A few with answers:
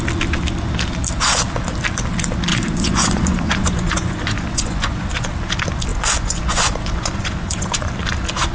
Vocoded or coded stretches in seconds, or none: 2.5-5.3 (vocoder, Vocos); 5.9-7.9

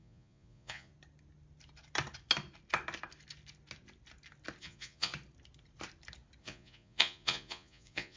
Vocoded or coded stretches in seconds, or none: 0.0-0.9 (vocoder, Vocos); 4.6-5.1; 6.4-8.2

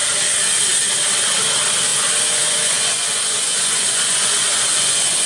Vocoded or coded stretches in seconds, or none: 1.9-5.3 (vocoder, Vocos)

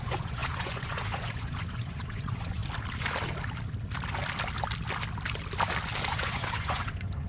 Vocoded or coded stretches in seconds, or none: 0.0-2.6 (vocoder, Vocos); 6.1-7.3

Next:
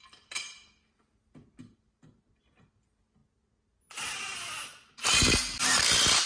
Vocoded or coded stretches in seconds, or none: none

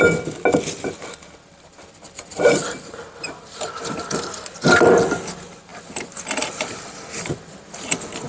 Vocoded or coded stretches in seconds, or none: none

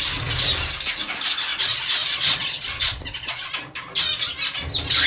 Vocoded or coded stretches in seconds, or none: 1.5-3.5 (vocoder, Vocos)

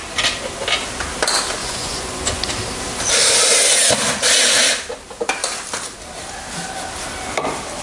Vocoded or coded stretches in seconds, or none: 1.6-2.5 (vocoder, Vocos)